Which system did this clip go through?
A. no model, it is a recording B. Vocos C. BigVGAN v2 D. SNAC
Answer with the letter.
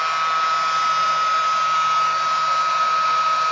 A